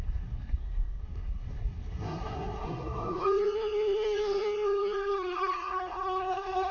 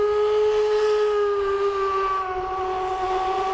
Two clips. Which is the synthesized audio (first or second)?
first